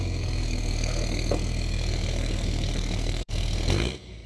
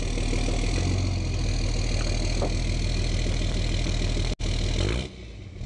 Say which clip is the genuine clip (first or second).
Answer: second